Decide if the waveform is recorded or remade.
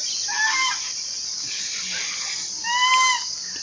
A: recorded